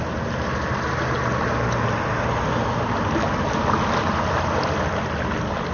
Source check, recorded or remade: recorded